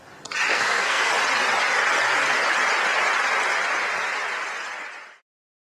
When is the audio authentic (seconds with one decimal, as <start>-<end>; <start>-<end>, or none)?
0.0-0.5; 1.1-5.8